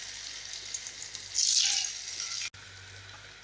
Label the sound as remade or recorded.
recorded